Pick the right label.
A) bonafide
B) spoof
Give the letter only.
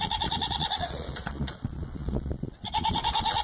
B